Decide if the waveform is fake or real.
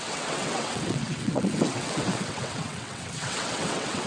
fake